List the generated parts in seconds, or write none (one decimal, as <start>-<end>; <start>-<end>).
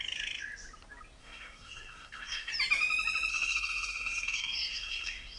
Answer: 1.2-2.5; 3.3-5.4